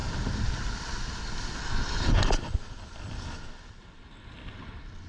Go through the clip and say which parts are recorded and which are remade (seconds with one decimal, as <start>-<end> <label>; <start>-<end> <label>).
0.0-1.2 remade; 1.2-5.1 recorded